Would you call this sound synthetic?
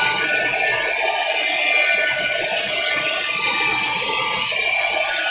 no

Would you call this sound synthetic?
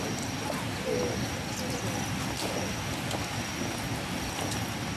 no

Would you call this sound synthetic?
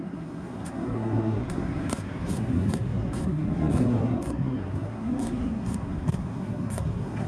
yes